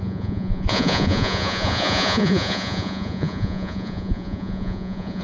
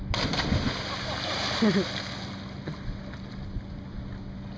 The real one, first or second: second